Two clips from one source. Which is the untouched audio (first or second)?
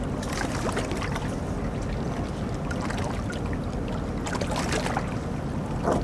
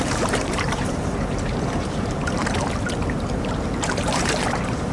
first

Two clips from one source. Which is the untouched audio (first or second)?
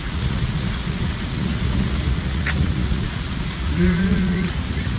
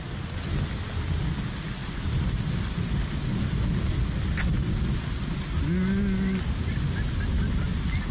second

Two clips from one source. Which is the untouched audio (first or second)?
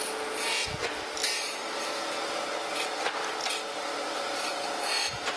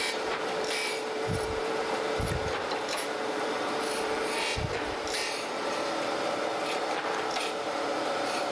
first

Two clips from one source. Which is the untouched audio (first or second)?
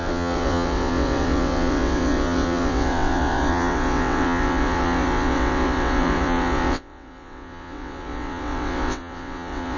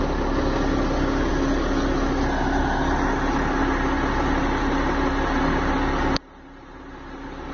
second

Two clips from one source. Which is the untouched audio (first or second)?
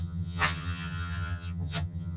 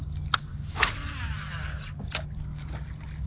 second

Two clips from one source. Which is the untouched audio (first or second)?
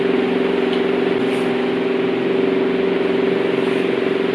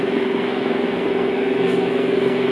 first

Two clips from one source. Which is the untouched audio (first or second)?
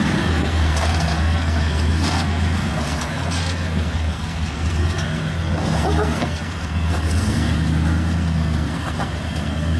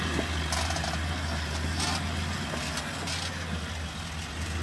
second